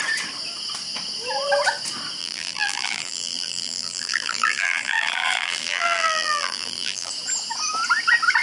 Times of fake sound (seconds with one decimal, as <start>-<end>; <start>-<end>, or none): 2.2-7.1